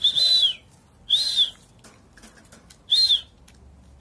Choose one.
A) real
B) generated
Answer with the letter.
A